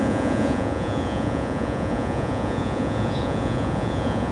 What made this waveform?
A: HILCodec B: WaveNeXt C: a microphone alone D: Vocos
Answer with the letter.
D